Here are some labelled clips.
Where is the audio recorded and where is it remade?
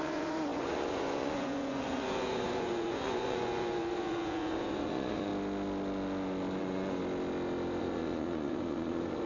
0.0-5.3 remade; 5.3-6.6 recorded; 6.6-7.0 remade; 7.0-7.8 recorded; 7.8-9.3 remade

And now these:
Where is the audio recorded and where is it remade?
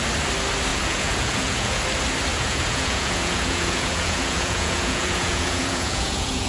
0.0-0.7 recorded; 0.7-1.8 remade; 1.8-2.3 recorded; 2.3-6.5 remade